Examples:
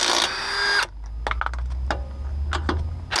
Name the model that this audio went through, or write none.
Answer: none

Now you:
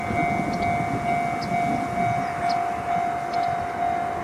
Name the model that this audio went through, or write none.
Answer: none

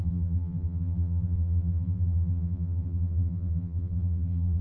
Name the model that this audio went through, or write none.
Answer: vocoder, BigVGAN v2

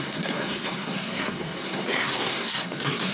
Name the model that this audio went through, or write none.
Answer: codec, SNAC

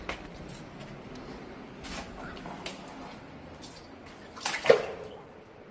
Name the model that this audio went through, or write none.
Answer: none